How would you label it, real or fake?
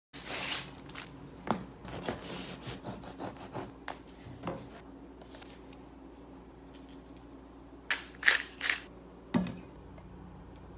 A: real